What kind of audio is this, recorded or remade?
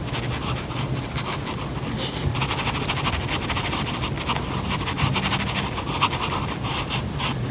recorded